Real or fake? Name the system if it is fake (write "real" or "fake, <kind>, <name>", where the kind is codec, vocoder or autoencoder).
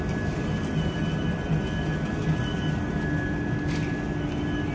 real